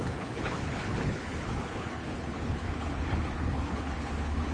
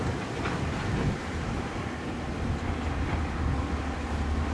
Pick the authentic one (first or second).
second